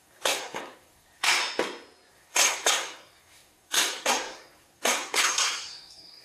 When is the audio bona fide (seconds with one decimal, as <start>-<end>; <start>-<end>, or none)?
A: 1.4-2.1